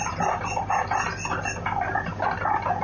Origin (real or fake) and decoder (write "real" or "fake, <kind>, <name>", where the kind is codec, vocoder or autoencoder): real